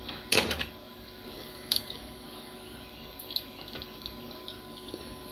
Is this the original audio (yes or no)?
no